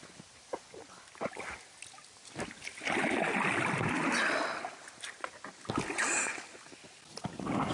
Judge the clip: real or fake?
real